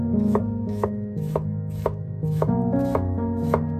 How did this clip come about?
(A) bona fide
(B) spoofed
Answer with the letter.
B